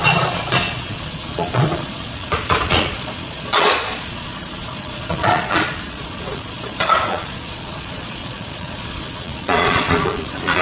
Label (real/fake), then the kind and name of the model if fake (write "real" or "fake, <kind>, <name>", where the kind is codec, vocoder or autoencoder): fake, vocoder, Vocos